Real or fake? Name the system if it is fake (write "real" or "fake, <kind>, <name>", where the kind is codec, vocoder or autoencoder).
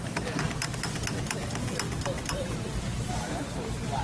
real